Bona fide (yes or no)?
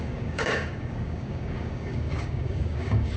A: no